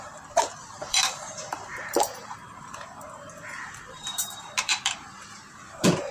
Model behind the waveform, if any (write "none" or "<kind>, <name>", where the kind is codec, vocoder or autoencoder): vocoder, BigVGAN v2